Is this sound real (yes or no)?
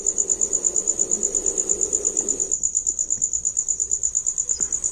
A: yes